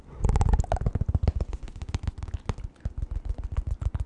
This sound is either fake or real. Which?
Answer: real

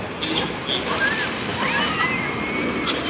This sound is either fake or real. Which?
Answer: real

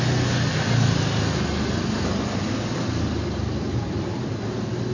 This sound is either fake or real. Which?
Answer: real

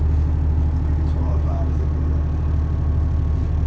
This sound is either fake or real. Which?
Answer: real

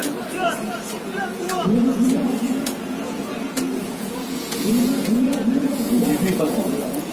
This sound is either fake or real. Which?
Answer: fake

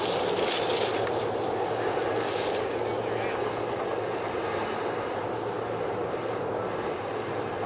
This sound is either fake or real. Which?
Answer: real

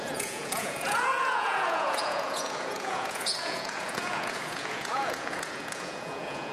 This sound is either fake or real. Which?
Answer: fake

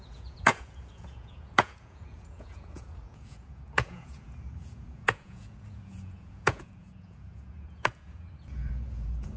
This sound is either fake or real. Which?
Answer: fake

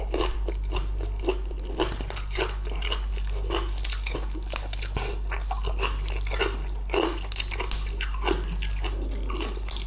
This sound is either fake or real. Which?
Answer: real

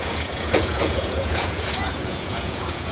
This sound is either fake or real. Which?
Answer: fake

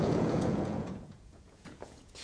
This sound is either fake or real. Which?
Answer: fake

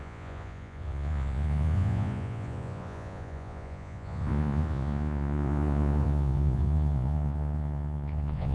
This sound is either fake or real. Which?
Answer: fake